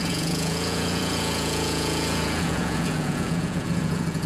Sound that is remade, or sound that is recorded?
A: remade